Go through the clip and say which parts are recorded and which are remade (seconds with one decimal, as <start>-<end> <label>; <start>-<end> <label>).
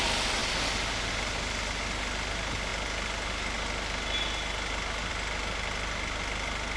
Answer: 0.0-6.8 recorded